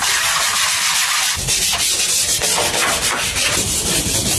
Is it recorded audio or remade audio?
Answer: remade